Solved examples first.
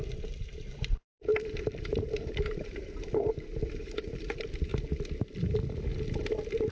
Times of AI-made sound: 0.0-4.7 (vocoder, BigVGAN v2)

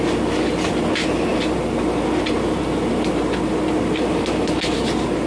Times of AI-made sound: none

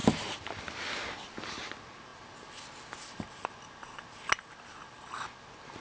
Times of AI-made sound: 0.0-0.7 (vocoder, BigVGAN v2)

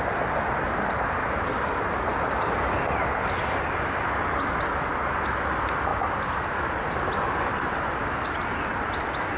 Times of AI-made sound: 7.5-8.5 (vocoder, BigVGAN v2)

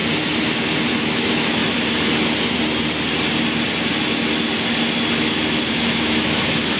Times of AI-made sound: 0.9-1.6 (autoencoder, DAC-VAE); 5.7-6.8

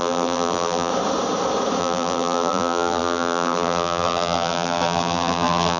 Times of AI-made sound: 0.0-0.9 (vocoder, BigVGAN v2); 1.8-5.8

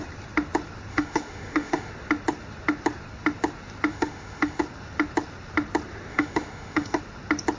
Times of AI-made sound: 0.9-1.9 (autoencoder, DAC-VAE); 3.9-4.6; 6.1-7.0

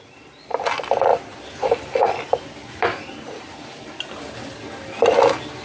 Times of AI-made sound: 1.1-2.1 (vocoder, BigVGAN v2); 2.6-4.0